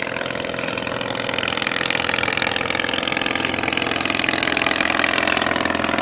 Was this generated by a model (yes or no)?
no